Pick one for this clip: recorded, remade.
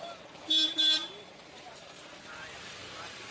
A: remade